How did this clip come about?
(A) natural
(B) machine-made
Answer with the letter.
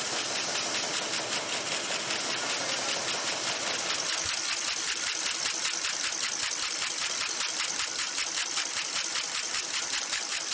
A